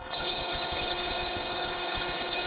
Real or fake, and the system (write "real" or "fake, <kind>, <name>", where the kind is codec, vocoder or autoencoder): fake, codec, HILCodec